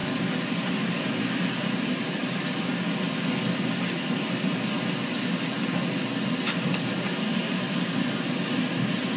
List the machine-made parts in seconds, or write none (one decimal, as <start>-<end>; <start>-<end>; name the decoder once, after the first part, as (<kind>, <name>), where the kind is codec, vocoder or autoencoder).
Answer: none